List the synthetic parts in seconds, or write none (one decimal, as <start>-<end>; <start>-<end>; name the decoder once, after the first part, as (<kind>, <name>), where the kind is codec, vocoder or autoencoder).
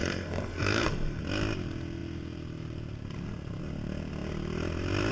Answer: 0.0-1.2 (codec, SNAC)